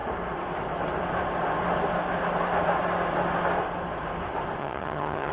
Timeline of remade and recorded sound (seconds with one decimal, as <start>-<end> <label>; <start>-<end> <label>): 0.0-4.6 recorded; 4.6-5.3 remade